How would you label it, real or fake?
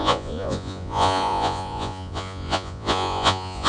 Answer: fake